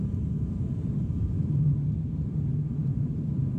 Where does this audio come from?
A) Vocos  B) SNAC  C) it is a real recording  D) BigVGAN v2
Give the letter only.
D